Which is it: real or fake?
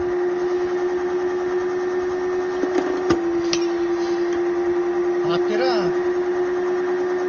real